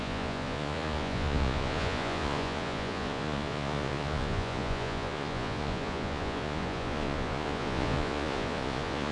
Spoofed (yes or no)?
yes